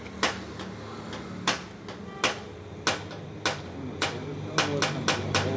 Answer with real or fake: real